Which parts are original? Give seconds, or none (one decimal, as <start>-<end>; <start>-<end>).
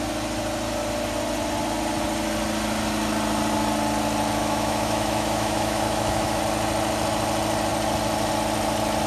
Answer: 0.0-4.4; 6.4-9.1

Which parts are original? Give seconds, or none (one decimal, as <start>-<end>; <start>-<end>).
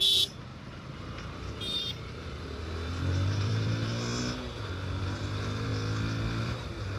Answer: 0.5-1.5; 3.9-5.0; 5.7-6.4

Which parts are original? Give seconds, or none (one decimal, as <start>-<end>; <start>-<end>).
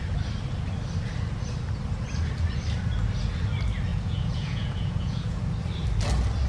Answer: 0.0-3.9; 5.4-6.5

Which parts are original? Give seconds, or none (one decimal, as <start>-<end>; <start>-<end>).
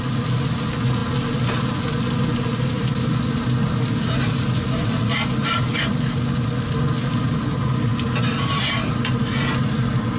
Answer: 0.0-10.2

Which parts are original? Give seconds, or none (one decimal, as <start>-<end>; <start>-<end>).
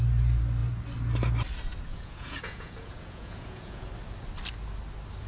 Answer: 0.0-1.9; 3.9-5.3